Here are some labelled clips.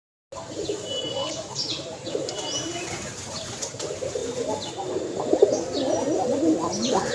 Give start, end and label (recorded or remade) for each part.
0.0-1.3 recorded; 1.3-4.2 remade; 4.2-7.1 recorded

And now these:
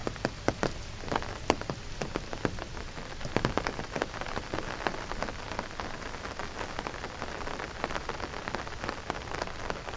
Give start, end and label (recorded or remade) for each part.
0.0-10.0 recorded